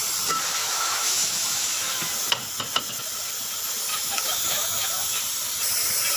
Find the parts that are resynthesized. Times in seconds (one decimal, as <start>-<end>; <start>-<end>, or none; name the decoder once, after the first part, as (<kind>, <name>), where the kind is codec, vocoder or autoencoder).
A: 0.6-2.1 (autoencoder, DAC-VAE); 3.9-5.2